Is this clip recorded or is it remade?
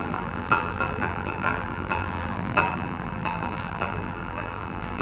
remade